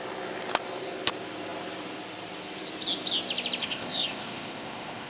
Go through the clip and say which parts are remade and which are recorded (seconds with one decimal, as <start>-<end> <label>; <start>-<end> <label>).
0.0-3.6 recorded; 3.6-5.1 remade